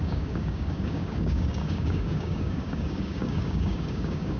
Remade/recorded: remade